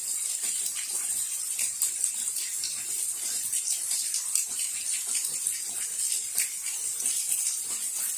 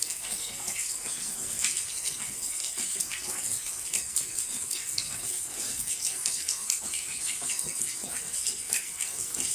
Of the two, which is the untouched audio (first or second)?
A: first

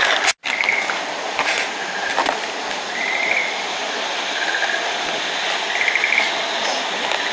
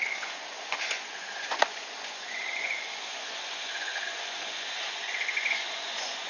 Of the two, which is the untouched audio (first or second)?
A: first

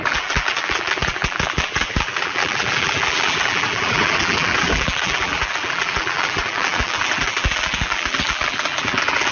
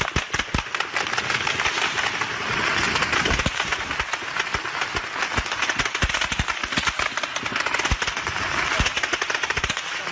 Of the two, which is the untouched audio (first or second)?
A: second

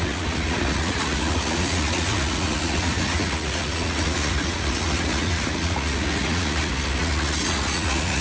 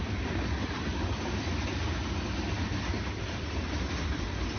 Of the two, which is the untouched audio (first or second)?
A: second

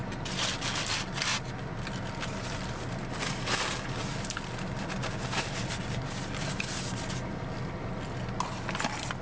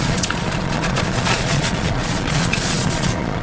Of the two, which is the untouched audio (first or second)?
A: first